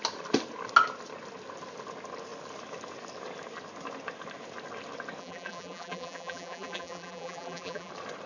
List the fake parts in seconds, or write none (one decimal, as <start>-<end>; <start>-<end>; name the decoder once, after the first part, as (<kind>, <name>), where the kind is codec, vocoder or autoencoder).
5.2-7.9 (vocoder, BigVGAN v2)